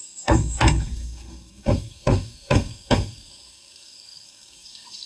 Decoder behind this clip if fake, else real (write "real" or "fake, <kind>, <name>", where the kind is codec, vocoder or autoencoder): fake, codec, SNAC